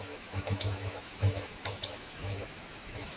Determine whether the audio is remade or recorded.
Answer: remade